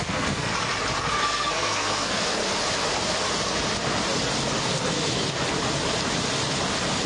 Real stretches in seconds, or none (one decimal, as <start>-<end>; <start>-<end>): 0.5-1.1; 2.4-7.1